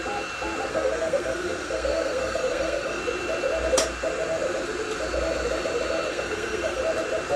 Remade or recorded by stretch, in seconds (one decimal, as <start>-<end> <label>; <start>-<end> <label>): 0.0-0.7 recorded; 0.7-3.0 remade; 3.0-6.1 recorded; 6.1-6.8 remade; 6.8-7.4 recorded